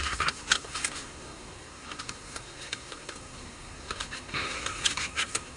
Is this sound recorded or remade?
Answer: remade